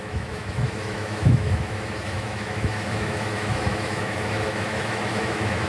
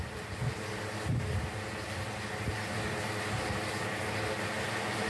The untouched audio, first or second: second